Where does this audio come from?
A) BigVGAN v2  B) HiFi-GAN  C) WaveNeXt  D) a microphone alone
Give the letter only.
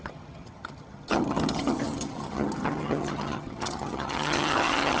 B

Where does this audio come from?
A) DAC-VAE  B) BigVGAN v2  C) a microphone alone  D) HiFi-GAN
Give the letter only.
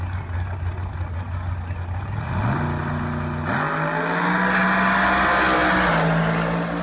C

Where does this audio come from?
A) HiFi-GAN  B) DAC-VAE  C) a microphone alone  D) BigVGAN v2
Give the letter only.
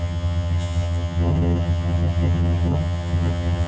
A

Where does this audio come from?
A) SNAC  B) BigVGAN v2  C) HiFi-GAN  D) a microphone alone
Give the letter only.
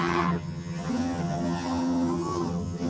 C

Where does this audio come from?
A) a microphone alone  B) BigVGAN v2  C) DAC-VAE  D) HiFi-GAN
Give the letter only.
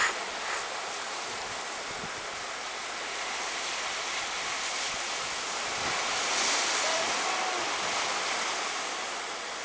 A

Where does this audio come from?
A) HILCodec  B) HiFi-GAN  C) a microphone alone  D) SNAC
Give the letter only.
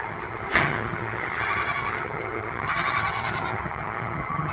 B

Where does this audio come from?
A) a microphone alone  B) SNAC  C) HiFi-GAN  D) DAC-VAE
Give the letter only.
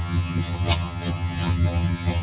C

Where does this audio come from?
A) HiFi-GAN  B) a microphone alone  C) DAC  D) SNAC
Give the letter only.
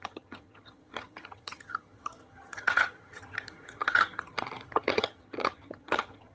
A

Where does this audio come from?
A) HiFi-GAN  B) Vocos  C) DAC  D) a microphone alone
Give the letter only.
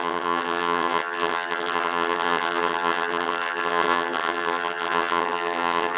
A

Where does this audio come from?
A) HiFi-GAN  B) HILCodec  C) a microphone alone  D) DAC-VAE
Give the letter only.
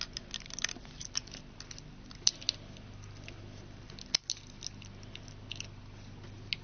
C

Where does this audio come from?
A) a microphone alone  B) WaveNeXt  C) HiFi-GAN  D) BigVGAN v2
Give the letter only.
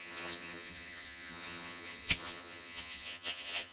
C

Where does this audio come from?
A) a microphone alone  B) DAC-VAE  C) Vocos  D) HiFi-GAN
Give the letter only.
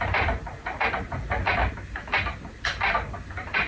A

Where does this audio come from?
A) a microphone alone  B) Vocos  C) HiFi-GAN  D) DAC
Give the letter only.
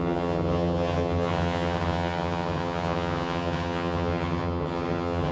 C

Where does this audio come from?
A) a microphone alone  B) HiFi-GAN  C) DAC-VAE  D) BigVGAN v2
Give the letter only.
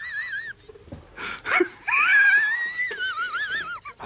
A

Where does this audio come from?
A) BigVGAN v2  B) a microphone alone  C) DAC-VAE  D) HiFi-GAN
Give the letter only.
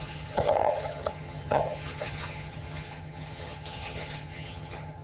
D